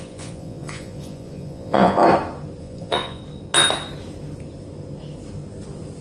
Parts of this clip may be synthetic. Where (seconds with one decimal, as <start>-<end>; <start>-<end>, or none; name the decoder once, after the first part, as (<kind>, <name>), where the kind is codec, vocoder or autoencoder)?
0.0-2.0 (vocoder, Vocos); 2.6-3.2